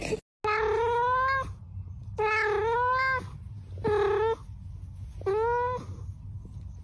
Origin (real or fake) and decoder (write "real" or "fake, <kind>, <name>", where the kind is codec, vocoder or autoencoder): real